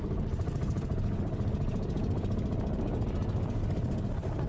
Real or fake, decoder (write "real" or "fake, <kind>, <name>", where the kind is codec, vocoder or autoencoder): real